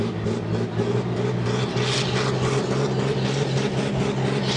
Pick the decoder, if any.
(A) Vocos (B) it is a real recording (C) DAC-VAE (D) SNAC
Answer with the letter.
B